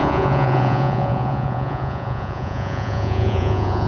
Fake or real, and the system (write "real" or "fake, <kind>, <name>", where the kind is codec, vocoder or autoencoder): fake, vocoder, Vocos